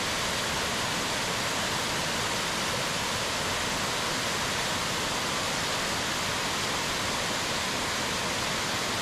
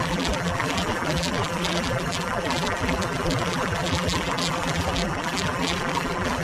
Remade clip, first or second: second